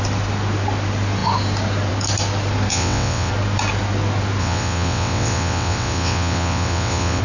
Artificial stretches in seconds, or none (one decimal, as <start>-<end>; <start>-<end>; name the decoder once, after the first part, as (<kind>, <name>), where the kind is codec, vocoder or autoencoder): 2.7-3.3 (vocoder, WaveNeXt); 4.4-7.2